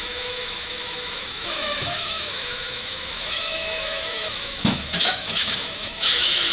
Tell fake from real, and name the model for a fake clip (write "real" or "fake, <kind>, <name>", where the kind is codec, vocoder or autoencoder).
fake, autoencoder, DAC-VAE